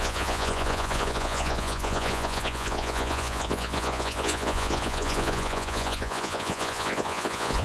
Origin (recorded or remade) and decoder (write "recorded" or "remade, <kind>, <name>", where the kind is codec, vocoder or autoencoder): remade, vocoder, Vocos